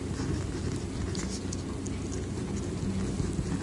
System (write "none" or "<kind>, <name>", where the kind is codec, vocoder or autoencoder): none